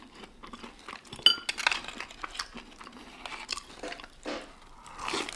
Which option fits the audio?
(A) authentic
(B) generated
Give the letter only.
A